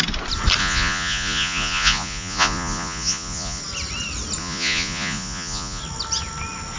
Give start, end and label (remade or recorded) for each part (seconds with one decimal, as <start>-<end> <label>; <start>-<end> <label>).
0.0-0.6 recorded; 0.6-3.6 remade; 3.6-4.4 recorded; 4.4-5.8 remade; 5.8-6.8 recorded